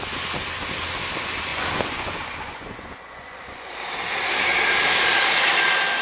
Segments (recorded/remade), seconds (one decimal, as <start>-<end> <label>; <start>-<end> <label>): 0.0-1.5 recorded; 1.5-3.7 remade; 3.7-6.0 recorded